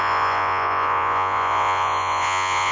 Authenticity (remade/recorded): remade